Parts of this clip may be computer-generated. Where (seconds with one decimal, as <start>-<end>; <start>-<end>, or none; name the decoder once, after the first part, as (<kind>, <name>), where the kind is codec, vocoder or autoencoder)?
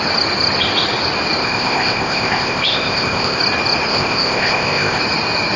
1.4-3.4 (codec, ZipCodec); 3.9-5.0